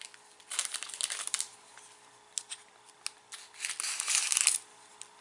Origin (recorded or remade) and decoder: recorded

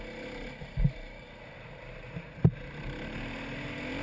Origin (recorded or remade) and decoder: recorded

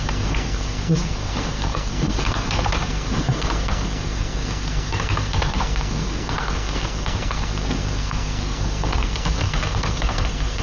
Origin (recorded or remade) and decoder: remade, codec, SNAC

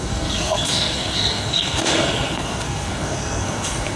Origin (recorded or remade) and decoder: remade, codec, SNAC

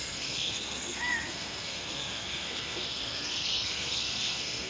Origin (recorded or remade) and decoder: remade, codec, SNAC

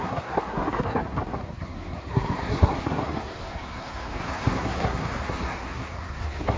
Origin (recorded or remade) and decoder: remade, codec, SNAC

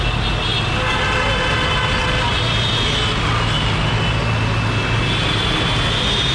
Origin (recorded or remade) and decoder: recorded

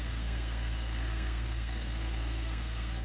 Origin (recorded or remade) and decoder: remade, codec, SNAC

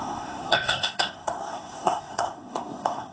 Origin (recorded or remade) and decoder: remade, codec, SNAC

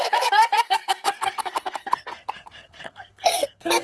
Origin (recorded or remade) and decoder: remade, codec, SNAC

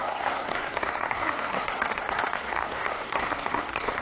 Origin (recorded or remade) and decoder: remade, codec, SNAC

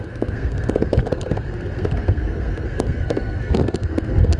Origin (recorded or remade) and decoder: remade, codec, SNAC